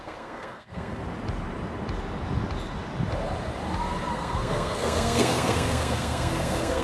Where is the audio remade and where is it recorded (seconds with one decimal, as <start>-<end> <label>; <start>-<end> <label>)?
0.0-1.0 remade; 1.0-4.1 recorded; 4.1-6.8 remade